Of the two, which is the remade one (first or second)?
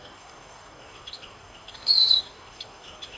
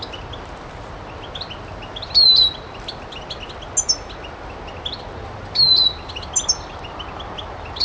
first